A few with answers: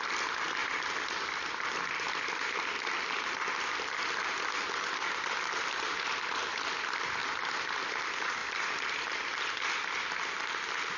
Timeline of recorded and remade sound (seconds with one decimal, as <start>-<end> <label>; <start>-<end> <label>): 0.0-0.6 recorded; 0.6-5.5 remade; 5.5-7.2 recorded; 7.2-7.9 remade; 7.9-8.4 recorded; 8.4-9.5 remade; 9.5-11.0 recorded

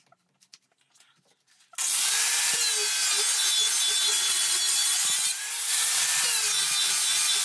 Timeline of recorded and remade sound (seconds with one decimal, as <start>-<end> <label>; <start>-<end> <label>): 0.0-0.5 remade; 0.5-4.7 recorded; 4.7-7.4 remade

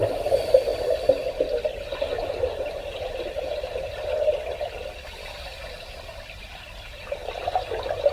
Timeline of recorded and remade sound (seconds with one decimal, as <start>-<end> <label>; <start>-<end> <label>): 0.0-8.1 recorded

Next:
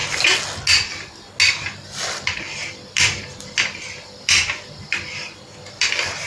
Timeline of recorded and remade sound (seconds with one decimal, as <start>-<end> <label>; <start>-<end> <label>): 0.0-1.5 recorded; 1.5-6.3 remade

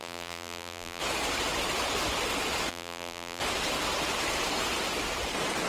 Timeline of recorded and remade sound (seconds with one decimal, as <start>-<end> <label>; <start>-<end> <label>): 0.0-1.0 remade; 1.0-2.7 recorded; 2.7-3.4 remade; 3.4-5.7 recorded

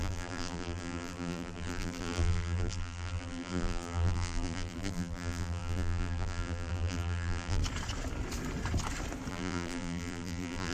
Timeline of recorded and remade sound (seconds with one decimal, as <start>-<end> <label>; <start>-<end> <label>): 0.0-7.6 remade; 7.6-9.3 recorded; 9.3-10.7 remade